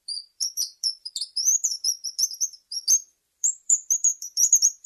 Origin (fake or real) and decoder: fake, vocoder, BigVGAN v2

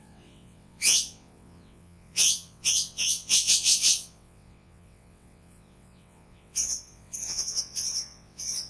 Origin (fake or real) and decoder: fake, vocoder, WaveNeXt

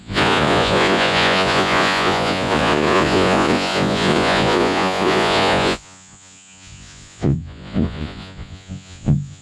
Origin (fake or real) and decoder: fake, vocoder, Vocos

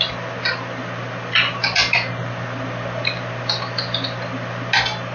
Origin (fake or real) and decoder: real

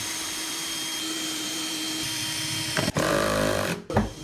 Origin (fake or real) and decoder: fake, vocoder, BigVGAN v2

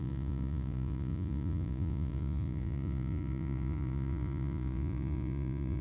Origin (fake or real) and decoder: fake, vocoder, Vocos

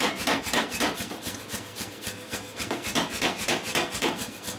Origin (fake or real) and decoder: fake, codec, SNAC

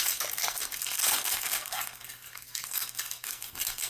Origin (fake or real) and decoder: fake, codec, SNAC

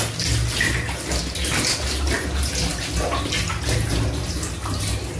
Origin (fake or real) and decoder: real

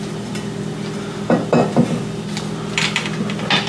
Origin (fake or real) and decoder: real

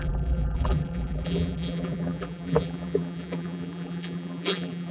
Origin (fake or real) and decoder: fake, vocoder, BigVGAN v2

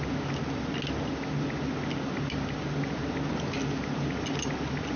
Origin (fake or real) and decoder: real